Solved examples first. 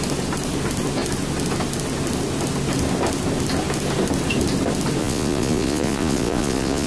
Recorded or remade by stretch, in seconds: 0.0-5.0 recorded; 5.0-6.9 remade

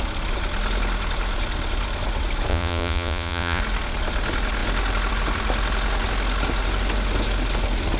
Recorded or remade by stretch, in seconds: 0.0-2.5 recorded; 2.5-3.6 remade; 3.6-8.0 recorded

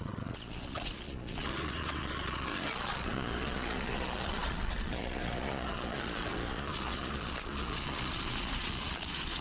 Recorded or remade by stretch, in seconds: 0.0-9.4 remade

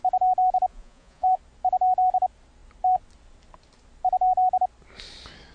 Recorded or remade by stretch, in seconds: 0.0-0.7 recorded; 0.7-1.4 remade; 1.4-5.5 recorded

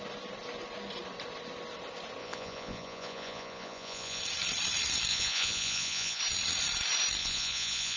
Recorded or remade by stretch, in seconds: 0.0-2.2 recorded; 2.2-4.2 remade; 4.2-5.1 recorded; 5.1-6.2 remade; 6.2-7.2 recorded; 7.2-8.0 remade

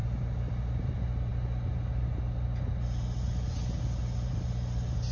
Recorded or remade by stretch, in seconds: 0.0-5.1 recorded

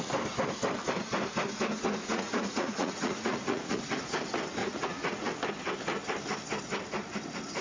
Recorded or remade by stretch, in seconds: 0.0-2.0 recorded; 2.0-3.8 remade; 3.8-4.6 recorded; 4.6-5.3 remade; 5.3-7.6 recorded